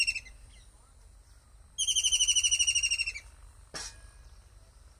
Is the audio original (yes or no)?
yes